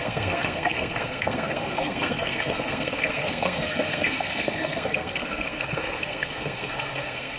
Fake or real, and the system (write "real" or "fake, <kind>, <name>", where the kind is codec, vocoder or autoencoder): fake, codec, SNAC